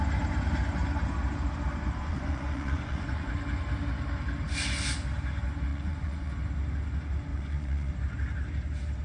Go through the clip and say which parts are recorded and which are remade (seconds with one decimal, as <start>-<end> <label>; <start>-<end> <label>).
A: 0.0-2.0 recorded; 2.0-3.3 remade; 3.3-5.7 recorded; 5.7-6.3 remade; 6.3-7.3 recorded; 7.3-7.9 remade; 7.9-9.0 recorded